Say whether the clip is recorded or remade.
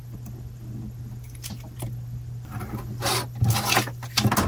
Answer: recorded